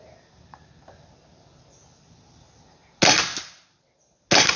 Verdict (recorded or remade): recorded